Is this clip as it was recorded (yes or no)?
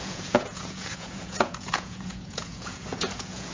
no